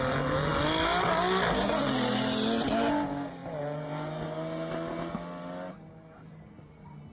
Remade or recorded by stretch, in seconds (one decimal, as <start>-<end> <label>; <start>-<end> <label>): 0.0-7.1 recorded